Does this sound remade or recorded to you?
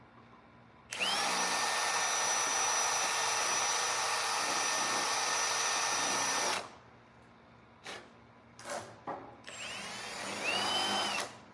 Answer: recorded